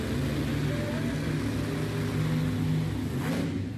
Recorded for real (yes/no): yes